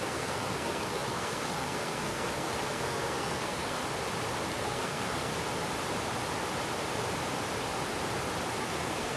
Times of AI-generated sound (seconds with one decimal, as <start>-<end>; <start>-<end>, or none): 0.0-3.8; 4.5-5.3; 8.6-9.2